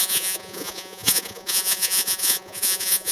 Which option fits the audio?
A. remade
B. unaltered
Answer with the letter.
A